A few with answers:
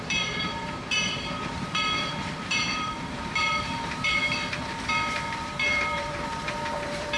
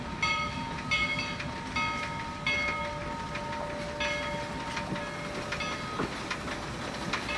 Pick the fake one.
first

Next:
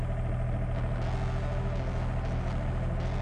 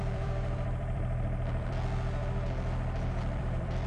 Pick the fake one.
second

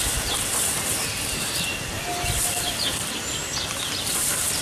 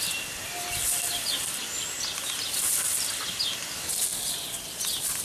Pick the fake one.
first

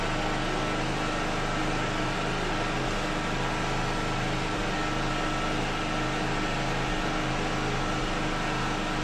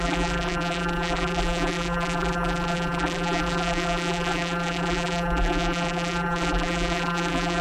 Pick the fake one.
second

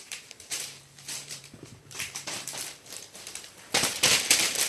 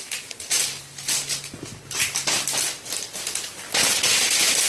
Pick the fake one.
first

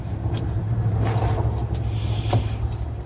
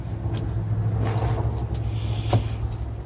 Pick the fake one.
first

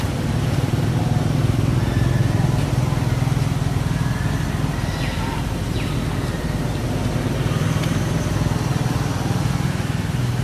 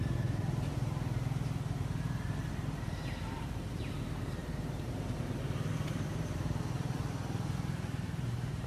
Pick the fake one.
second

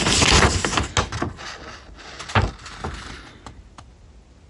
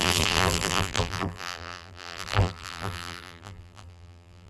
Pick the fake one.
second